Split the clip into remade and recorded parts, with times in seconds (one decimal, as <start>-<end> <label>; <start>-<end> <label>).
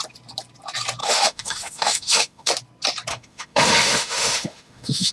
0.0-1.0 recorded; 1.0-2.5 remade; 2.5-3.1 recorded; 3.1-5.1 remade